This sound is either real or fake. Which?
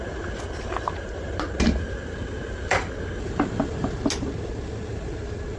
real